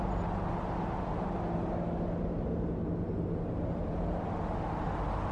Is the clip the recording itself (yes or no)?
yes